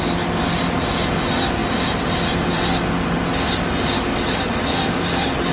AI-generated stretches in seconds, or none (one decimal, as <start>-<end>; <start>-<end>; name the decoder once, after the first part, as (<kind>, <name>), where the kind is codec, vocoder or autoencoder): none

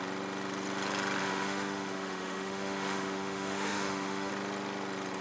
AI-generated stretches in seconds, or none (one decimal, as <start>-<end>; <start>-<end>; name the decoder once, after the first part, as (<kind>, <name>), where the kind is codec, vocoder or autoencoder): 1.2-4.3 (autoencoder, DAC-VAE)

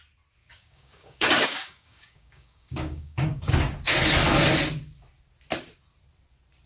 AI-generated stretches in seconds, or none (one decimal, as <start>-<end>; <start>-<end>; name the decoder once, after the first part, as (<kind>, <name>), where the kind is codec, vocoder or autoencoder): 0.4-3.5 (codec, DAC)

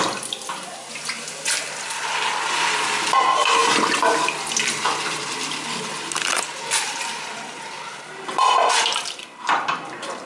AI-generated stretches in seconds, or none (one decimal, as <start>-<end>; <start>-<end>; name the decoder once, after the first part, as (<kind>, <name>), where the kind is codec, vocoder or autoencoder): 0.0-3.6 (vocoder, BigVGAN v2); 6.8-8.1; 8.6-10.3

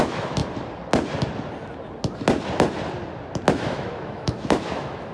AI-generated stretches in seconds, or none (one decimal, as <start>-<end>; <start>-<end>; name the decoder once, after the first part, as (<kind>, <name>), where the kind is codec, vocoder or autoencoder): 0.0-0.4 (autoencoder, DAC-VAE); 3.5-5.1

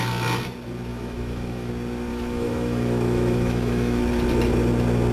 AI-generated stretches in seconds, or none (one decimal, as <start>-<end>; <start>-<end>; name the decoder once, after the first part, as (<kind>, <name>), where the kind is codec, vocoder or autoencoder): 0.9-1.7 (autoencoder, DAC-VAE); 2.1-4.0

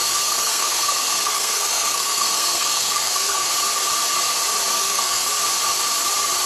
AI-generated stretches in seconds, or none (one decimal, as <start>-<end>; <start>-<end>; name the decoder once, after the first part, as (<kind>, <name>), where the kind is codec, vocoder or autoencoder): 0.0-3.5 (codec, SNAC); 4.7-5.3